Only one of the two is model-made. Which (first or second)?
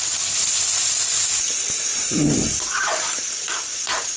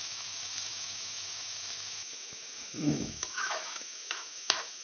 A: second